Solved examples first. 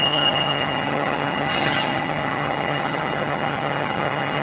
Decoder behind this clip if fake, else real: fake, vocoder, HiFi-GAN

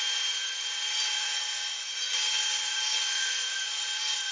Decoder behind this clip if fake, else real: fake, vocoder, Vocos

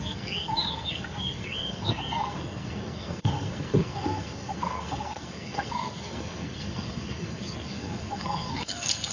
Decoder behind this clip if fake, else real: fake, codec, SNAC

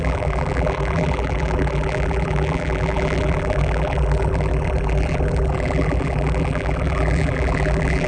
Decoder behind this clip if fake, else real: fake, vocoder, BigVGAN v2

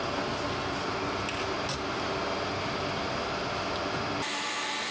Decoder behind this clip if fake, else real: real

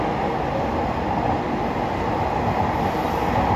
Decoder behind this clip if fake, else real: real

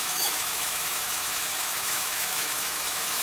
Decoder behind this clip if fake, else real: fake, autoencoder, DAC-VAE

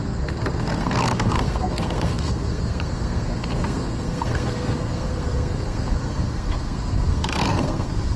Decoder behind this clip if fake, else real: fake, codec, SNAC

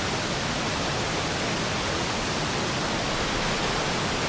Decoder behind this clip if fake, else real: real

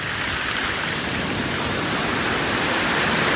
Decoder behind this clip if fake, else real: real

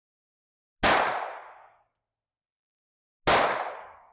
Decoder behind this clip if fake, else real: real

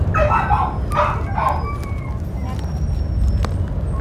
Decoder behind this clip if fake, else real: real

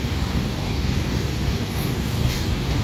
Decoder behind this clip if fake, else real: fake, codec, DAC